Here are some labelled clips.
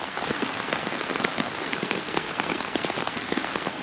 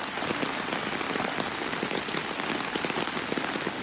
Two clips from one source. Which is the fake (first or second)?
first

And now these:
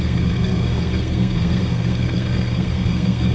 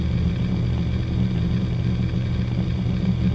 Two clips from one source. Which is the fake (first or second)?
first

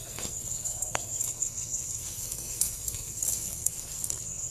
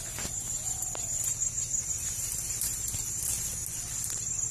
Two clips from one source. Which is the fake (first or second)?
first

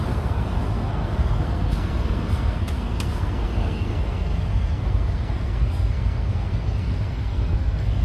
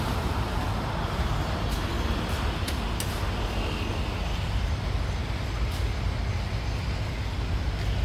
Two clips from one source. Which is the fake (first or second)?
first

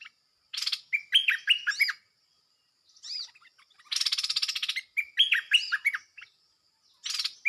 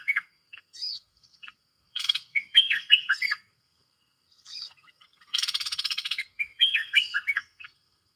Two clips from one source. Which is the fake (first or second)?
second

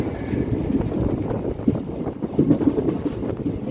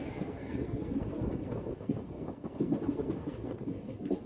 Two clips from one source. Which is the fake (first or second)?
second